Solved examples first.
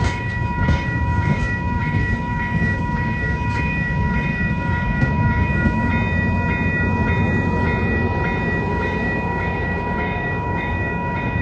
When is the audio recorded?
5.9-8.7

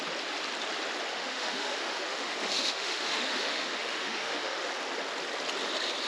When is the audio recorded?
0.0-1.1; 4.7-6.1

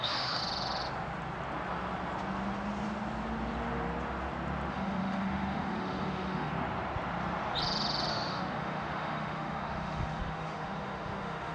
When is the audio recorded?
0.4-4.7; 6.5-8.1

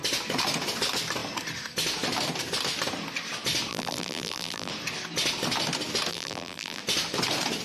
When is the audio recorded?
0.0-3.7; 4.7-6.1; 6.8-7.6

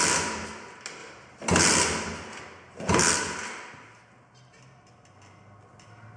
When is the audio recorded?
0.0-1.0; 1.6-6.2

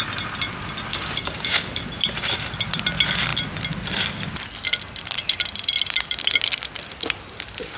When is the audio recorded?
0.0-0.9; 1.8-7.8

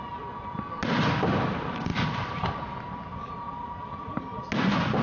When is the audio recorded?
0.0-5.0